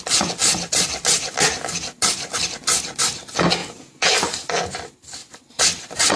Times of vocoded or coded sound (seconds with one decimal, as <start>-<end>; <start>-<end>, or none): 3.6-4.1